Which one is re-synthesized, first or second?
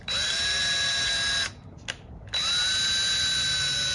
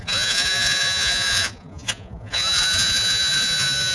second